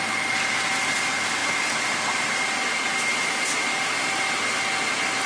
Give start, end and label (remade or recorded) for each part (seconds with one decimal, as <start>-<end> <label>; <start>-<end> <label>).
0.0-5.3 recorded